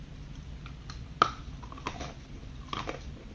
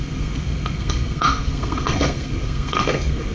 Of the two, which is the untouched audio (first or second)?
first